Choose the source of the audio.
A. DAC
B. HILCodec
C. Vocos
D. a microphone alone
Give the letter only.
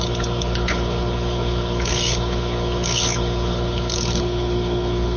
B